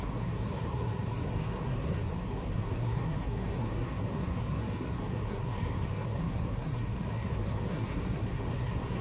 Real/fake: fake